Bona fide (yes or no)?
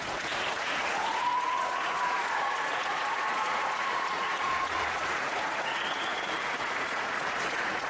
no